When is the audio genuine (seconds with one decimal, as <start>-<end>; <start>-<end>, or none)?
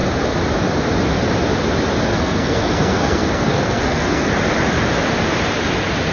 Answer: 0.0-2.1; 4.3-6.1